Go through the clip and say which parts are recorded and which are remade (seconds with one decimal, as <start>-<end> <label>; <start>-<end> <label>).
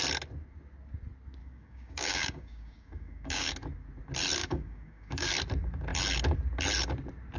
0.0-1.4 recorded; 1.4-3.5 remade; 3.5-4.4 recorded; 4.4-5.3 remade; 5.3-7.4 recorded